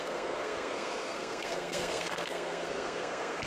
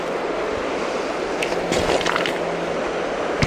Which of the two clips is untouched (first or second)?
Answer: second